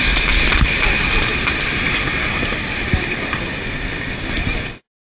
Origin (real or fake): real